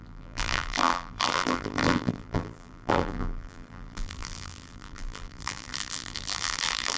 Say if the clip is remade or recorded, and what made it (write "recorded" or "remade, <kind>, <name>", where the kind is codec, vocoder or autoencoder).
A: remade, vocoder, BigVGAN v2